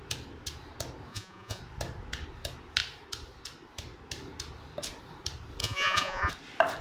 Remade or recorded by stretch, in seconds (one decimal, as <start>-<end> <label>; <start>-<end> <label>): 0.0-1.1 recorded; 1.1-1.6 remade; 1.6-5.6 recorded; 5.6-6.3 remade; 6.3-6.8 recorded